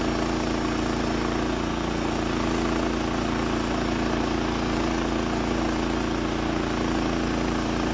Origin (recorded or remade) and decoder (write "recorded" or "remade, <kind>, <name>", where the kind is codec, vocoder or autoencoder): recorded